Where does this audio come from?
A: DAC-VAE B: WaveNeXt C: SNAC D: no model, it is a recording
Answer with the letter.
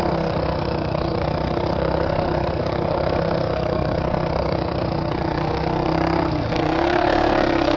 C